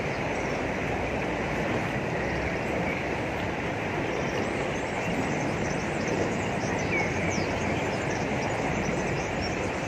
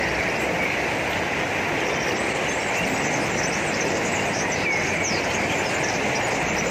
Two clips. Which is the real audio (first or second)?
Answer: second